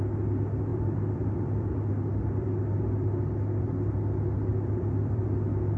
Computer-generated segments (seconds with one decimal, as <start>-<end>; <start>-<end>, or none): 0.7-1.7; 2.1-3.7; 4.5-5.2